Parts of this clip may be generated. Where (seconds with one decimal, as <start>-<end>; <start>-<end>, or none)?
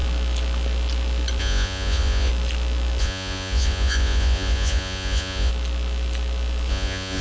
1.4-2.3; 3.0-5.5; 6.7-7.2